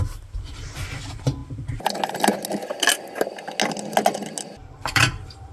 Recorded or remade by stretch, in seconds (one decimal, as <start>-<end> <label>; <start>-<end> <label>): 0.0-4.6 recorded; 4.6-5.5 remade